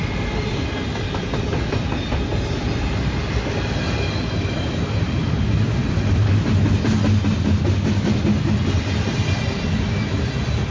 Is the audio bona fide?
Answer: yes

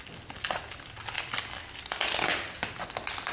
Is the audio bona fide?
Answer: yes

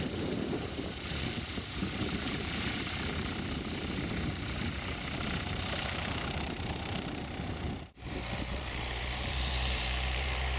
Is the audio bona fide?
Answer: no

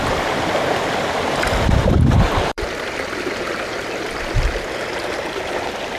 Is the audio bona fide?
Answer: no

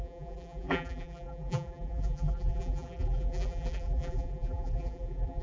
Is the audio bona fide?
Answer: no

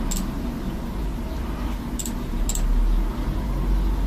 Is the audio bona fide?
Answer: yes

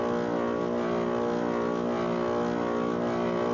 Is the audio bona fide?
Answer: yes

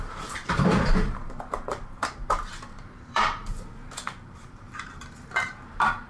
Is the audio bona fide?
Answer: no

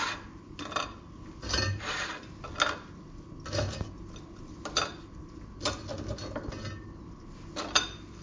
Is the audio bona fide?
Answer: yes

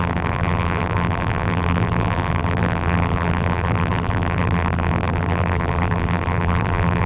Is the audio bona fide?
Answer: no